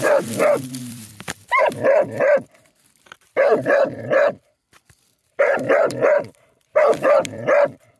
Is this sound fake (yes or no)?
yes